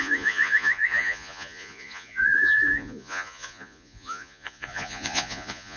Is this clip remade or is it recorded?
remade